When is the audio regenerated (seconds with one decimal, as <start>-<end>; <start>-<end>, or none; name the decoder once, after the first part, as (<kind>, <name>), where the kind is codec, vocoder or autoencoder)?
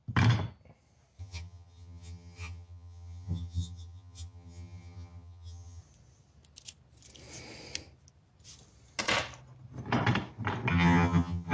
1.2-5.8 (vocoder, HiFi-GAN); 10.7-11.5